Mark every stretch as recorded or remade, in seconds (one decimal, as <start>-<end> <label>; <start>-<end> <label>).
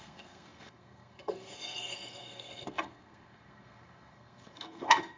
0.0-5.2 remade